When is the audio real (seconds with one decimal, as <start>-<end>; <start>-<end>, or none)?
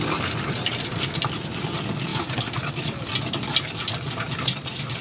0.0-5.0